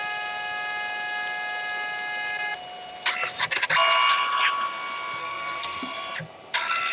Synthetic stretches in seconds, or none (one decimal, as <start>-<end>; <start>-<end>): 5.2-5.8